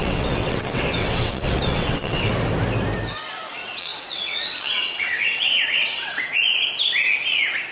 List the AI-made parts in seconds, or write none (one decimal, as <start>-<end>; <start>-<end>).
0.0-2.3; 3.5-6.3